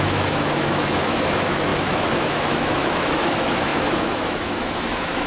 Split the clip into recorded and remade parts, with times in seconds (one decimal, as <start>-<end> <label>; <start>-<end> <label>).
0.0-5.3 remade